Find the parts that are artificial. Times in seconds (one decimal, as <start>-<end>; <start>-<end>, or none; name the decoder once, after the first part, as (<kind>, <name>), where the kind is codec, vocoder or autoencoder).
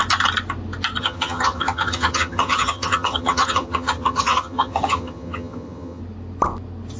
1.0-6.0 (vocoder, HiFi-GAN)